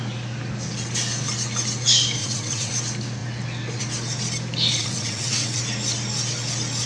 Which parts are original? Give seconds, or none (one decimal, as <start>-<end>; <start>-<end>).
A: 0.0-2.2; 2.7-4.8; 5.6-6.9